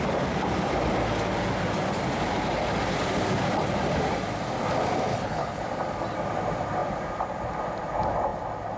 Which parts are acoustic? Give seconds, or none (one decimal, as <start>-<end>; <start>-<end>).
0.0-5.1; 5.6-8.8